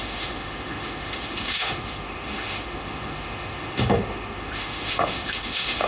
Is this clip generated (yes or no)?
yes